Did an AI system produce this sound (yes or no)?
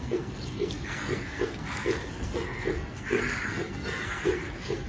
yes